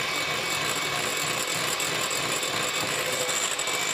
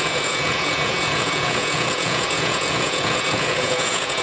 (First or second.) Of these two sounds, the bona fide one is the first